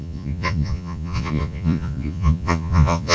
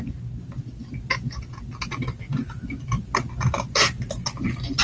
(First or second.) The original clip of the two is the second